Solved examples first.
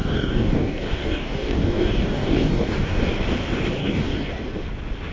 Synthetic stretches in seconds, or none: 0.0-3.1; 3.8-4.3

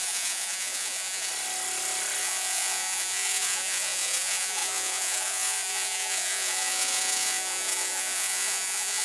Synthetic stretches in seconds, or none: 0.0-1.3; 2.2-9.0

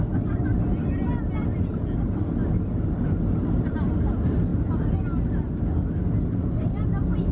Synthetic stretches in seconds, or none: none

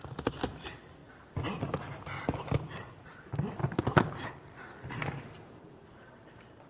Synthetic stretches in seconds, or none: 0.0-1.0; 3.1-3.6; 4.9-6.7

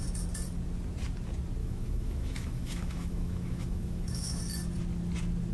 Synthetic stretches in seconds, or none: 1.6-4.4

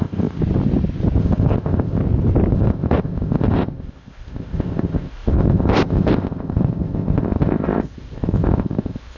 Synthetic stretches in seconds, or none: 0.0-0.4; 1.2-2.0; 2.5-9.2